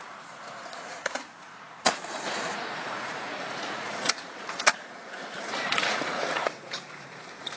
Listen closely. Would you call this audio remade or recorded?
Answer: remade